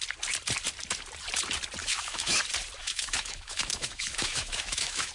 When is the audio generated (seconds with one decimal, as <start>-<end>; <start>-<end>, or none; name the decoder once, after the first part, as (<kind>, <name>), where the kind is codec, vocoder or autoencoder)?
1.8-2.4 (autoencoder, DAC-VAE); 2.8-5.1